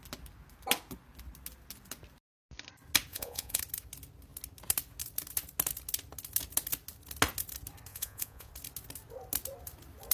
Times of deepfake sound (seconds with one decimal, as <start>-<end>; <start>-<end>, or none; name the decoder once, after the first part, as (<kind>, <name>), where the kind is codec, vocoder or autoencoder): 3.1-3.6 (vocoder, Vocos); 7.9-8.5